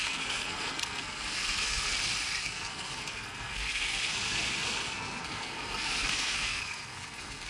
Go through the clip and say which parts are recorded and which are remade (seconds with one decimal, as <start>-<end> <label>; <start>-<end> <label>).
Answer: 0.0-1.9 remade; 1.9-2.4 recorded; 2.4-7.5 remade